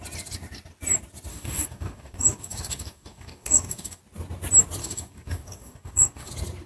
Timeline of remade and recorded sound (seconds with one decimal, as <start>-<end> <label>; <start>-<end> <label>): 0.0-1.3 recorded; 1.3-4.0 remade; 4.0-4.8 recorded; 4.8-6.3 remade; 6.3-6.7 recorded